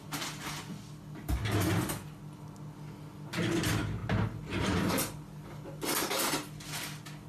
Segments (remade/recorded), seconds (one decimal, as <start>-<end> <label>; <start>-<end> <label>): 0.0-7.3 recorded